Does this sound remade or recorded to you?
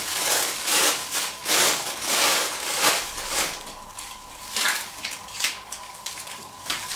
remade